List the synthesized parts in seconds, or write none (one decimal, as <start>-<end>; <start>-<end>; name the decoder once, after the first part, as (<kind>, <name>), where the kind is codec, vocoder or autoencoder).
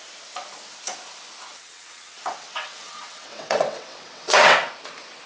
1.5-4.7 (vocoder, WaveNeXt)